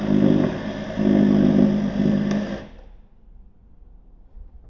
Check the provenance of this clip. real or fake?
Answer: real